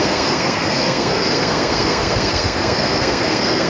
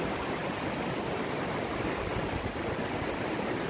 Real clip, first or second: second